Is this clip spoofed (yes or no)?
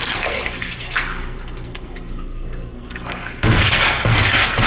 yes